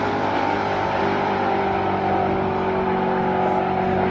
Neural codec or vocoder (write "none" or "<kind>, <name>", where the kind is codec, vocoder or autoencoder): none